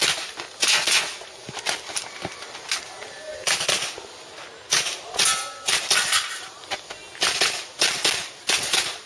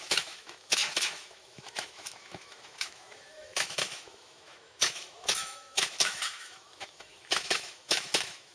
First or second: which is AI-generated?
second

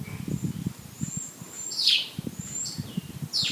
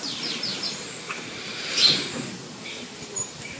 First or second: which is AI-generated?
second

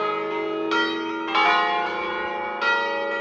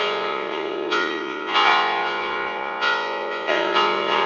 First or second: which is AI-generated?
second